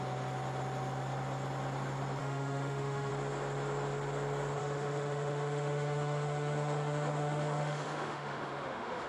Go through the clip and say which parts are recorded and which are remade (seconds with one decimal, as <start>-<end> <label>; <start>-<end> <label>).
0.0-2.2 recorded; 2.2-3.1 remade; 3.1-4.6 recorded; 4.6-9.1 remade